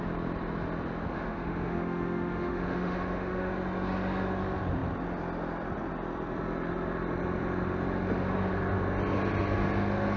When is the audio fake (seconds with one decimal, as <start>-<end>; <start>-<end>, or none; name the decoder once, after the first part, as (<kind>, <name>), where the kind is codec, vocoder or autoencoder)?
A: 1.1-3.5 (autoencoder, DAC-VAE)